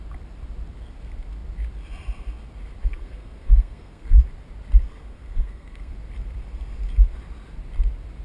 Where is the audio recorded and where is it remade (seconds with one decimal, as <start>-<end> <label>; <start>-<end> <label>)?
0.0-2.8 recorded; 2.8-4.2 remade; 4.2-4.9 recorded; 4.9-5.9 remade; 5.9-8.2 recorded